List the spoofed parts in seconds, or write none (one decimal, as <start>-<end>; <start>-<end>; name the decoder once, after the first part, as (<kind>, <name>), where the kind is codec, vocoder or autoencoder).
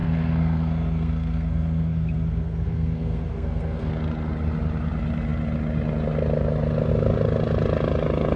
0.0-3.9 (codec, SNAC)